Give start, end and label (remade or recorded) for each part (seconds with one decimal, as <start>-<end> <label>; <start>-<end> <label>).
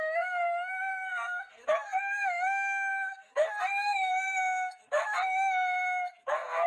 0.0-6.7 remade